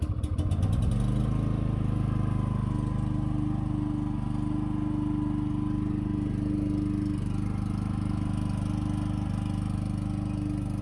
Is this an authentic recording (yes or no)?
yes